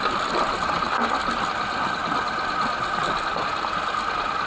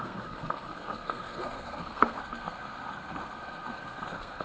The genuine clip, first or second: first